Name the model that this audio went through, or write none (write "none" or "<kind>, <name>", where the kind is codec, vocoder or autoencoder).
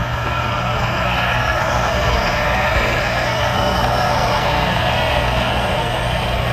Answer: codec, SNAC